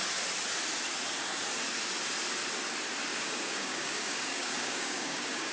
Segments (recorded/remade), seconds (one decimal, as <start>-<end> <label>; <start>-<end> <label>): 0.0-3.1 recorded; 3.1-5.5 remade

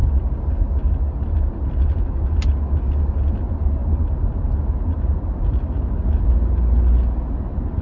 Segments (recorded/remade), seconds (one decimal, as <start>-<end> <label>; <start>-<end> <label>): 0.0-7.8 recorded

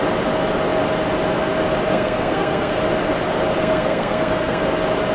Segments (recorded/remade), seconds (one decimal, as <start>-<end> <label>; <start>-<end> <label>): 0.0-1.9 recorded; 1.9-2.8 remade; 2.8-3.6 recorded; 3.6-4.6 remade; 4.6-5.1 recorded

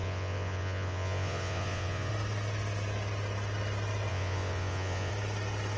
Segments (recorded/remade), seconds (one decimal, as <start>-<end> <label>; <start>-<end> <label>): 0.0-2.1 remade; 2.1-4.1 recorded; 4.1-5.1 remade; 5.1-5.8 recorded

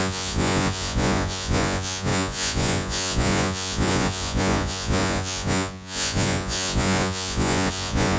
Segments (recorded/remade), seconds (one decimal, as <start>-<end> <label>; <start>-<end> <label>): 0.0-8.2 remade

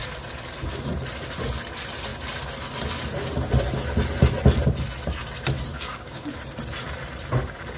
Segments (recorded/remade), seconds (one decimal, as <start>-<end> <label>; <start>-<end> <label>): 0.0-5.7 recorded; 5.7-6.4 remade; 6.4-7.8 recorded